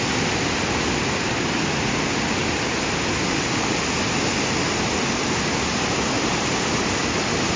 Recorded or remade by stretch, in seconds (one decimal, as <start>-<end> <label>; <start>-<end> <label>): 0.0-7.6 recorded